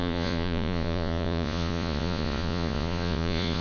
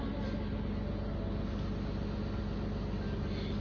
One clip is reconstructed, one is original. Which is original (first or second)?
second